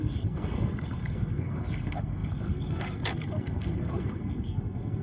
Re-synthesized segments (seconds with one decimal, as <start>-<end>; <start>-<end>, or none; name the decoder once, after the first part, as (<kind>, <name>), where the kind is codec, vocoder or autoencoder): 0.0-5.0 (codec, SNAC)